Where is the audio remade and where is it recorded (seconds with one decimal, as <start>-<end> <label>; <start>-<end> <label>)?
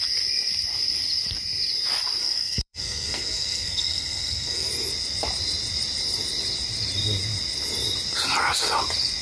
0.0-2.2 recorded; 2.2-4.7 remade; 4.7-9.2 recorded